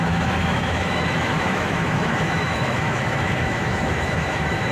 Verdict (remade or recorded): remade